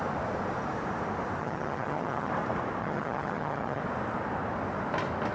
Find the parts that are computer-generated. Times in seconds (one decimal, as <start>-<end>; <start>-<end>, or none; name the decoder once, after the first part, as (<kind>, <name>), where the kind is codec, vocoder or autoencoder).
1.4-2.3 (vocoder, HiFi-GAN); 2.8-3.8